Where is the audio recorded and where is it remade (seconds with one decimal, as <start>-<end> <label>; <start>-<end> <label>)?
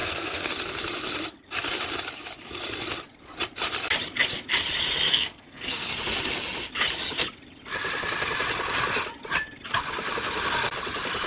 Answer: 0.0-0.5 remade; 0.5-5.1 recorded; 5.1-5.9 remade; 5.9-11.3 recorded